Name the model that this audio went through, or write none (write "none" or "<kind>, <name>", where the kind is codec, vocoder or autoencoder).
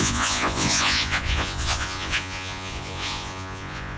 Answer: vocoder, Vocos